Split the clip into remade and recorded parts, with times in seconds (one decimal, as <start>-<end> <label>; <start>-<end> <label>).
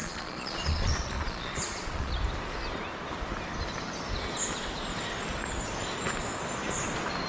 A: 0.0-2.2 remade; 2.2-7.3 recorded